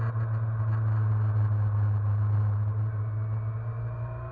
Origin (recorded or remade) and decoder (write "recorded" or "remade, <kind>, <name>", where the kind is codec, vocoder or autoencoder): recorded